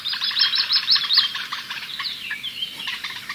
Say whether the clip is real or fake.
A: fake